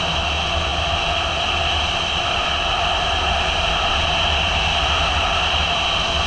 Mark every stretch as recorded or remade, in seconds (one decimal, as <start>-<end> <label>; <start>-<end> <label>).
0.0-6.3 recorded